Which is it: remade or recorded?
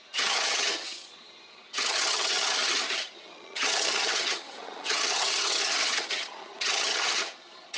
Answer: remade